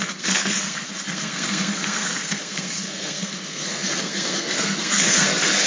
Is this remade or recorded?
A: remade